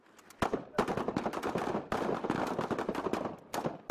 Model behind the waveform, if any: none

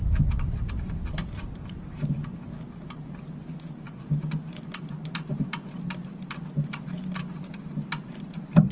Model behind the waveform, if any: vocoder, BigVGAN v2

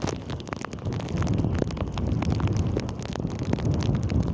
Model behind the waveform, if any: none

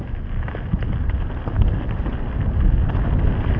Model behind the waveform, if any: none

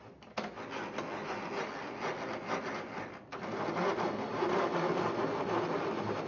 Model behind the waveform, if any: none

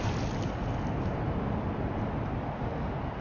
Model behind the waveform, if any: none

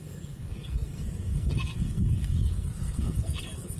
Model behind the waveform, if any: codec, SNAC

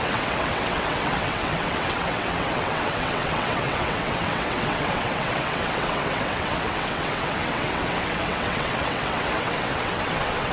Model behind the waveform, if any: vocoder, WaveNeXt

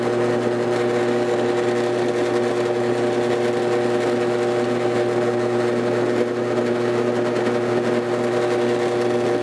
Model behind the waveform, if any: none